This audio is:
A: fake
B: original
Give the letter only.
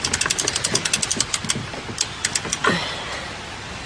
B